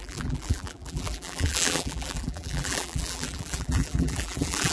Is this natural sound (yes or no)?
no